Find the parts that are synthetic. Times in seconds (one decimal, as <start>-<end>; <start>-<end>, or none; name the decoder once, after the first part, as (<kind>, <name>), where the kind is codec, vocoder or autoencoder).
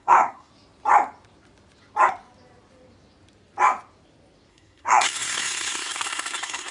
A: 0.0-0.5 (codec, SNAC); 4.5-6.7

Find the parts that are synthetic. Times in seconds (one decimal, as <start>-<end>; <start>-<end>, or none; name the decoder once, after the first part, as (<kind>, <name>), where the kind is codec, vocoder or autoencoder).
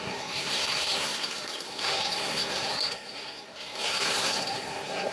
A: 0.0-5.1 (codec, SNAC)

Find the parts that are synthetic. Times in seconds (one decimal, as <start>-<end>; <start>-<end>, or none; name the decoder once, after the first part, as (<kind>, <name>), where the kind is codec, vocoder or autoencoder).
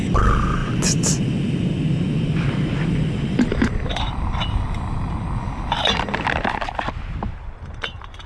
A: none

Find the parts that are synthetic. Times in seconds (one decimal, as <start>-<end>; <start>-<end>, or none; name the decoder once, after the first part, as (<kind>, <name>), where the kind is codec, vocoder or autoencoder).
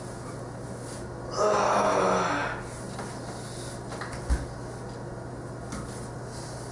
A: none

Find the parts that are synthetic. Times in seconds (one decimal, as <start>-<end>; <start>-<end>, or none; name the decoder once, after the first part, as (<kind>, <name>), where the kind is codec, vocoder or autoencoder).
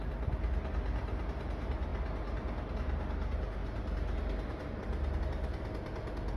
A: none